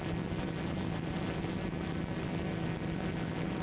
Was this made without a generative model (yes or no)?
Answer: yes